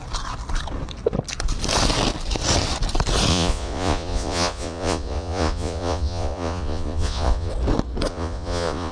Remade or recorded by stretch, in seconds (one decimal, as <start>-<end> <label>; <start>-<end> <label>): 0.0-3.3 recorded; 3.3-7.5 remade; 7.5-8.1 recorded; 8.1-8.9 remade